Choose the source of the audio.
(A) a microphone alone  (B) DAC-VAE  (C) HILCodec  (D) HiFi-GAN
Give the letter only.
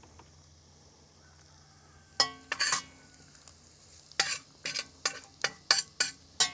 A